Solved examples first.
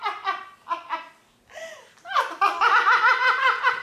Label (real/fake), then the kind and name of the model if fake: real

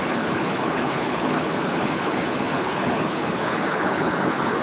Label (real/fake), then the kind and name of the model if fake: fake, codec, HILCodec